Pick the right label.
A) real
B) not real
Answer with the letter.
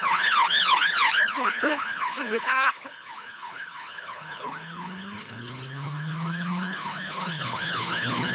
B